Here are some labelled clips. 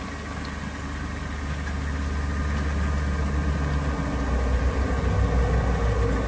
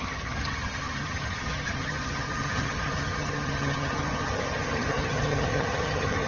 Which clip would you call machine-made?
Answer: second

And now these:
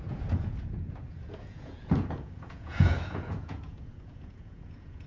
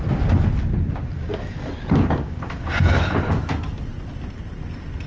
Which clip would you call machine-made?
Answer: first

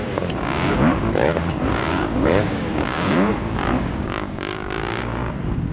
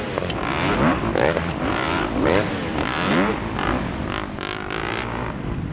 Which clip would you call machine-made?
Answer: first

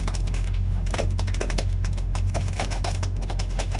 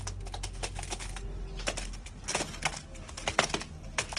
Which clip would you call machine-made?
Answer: first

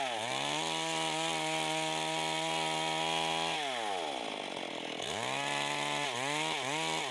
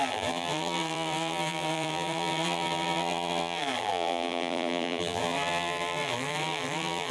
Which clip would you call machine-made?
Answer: second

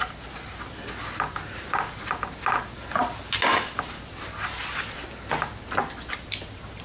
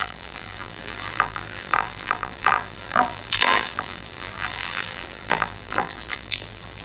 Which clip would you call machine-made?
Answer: second